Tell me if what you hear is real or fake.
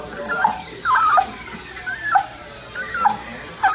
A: real